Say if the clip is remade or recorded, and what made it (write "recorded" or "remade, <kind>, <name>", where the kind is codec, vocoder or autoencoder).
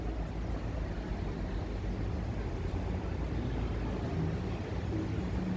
recorded